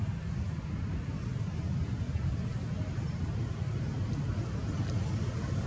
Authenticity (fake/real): real